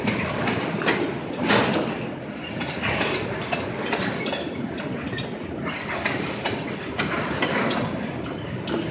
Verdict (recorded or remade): recorded